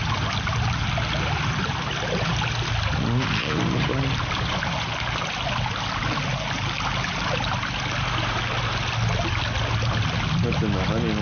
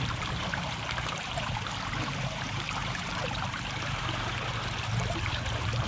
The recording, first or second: first